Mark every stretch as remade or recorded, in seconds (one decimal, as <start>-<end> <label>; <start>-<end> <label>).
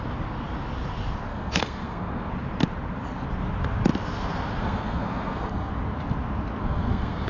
0.0-1.3 recorded; 1.3-2.3 remade; 2.3-4.6 recorded; 4.6-5.7 remade; 5.7-6.6 recorded; 6.6-7.3 remade